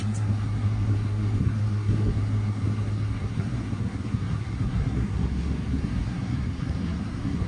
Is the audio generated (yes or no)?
yes